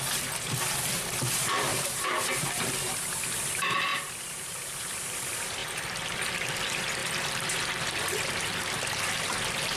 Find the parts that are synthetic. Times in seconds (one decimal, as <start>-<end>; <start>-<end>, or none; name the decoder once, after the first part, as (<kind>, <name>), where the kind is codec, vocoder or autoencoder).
1.7-2.6 (vocoder, BigVGAN v2); 3.9-4.9; 5.6-6.3; 7.0-7.6